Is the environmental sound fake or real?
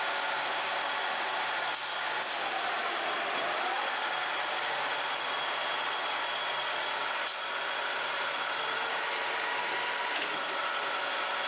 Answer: real